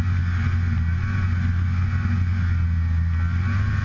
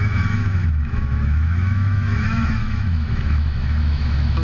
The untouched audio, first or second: first